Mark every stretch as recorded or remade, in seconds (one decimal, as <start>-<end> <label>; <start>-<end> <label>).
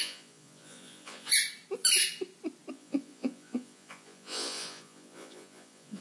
0.0-1.3 remade; 1.3-2.7 recorded; 2.7-6.0 remade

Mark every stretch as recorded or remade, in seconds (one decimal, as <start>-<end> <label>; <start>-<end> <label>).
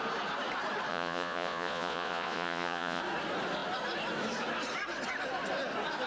0.0-0.9 recorded; 0.9-3.0 remade; 3.0-6.1 recorded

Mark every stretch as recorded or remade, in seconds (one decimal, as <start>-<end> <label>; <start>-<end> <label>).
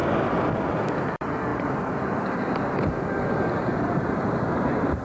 0.0-1.1 remade; 1.1-1.5 recorded; 1.5-4.5 remade; 4.5-5.0 recorded